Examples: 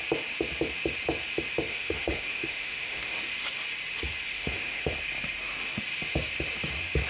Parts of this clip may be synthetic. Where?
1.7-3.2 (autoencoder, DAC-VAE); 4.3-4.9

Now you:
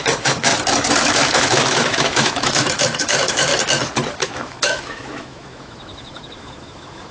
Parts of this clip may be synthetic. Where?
0.0-0.5 (autoencoder, DAC-VAE); 1.0-3.5; 4.1-7.1